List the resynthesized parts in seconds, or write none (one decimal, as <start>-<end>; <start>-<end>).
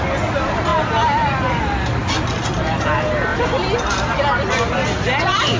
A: none